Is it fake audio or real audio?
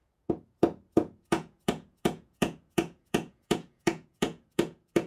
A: fake